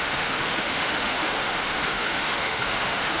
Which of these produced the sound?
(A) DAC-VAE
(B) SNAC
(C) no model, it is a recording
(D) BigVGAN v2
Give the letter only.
A